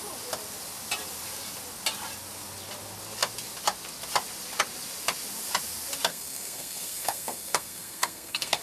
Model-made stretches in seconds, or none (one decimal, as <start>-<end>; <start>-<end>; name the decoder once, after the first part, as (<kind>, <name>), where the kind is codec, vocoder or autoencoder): 6.1-8.6 (codec, SNAC)